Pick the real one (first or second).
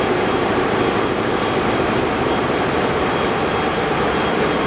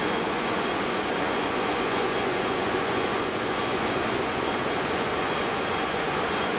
first